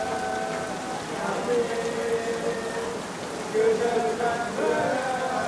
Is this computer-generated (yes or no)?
no